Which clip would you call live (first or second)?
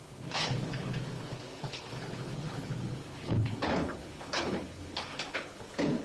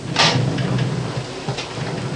second